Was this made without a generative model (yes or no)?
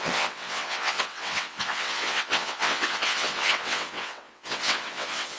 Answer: no